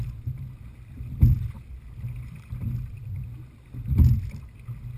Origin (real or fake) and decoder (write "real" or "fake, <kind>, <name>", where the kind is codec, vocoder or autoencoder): real